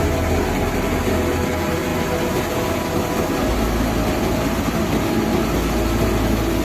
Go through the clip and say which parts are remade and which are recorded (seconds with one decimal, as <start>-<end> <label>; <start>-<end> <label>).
0.0-6.6 recorded